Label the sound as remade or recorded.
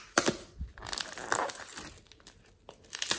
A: recorded